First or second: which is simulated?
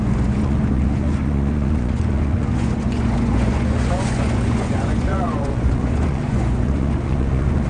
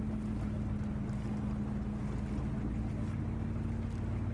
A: first